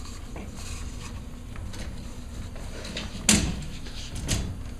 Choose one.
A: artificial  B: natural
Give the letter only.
B